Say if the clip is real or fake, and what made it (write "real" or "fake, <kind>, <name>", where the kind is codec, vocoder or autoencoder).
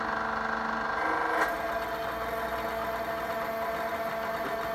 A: real